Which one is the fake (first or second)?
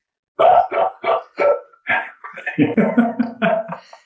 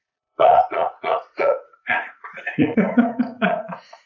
second